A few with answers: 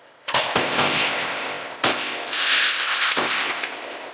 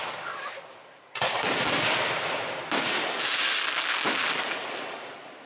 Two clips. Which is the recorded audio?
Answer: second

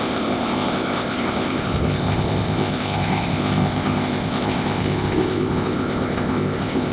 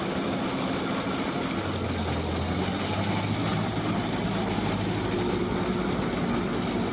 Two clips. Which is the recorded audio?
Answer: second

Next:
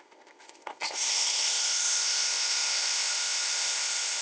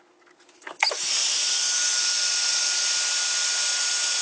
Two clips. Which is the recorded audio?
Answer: second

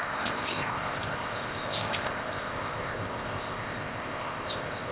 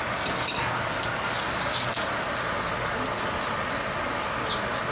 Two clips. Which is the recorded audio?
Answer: second